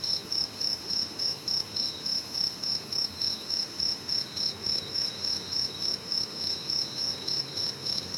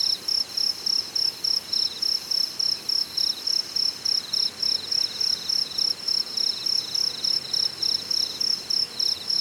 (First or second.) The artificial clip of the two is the first